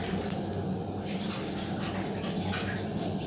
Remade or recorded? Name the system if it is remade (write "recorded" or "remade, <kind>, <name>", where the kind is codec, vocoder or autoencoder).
recorded